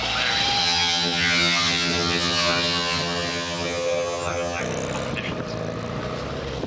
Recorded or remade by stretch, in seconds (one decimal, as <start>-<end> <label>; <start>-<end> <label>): 0.0-0.6 recorded; 0.6-4.6 remade; 4.6-6.7 recorded